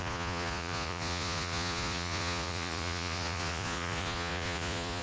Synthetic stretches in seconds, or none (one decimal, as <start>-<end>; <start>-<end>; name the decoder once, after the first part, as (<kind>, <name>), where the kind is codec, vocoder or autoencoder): 0.0-5.0 (vocoder, Vocos)